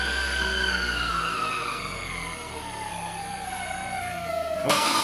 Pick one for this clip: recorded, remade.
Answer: remade